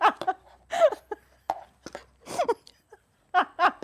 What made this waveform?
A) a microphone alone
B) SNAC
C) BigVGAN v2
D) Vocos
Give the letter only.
A